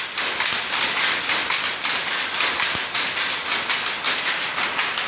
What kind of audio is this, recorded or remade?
recorded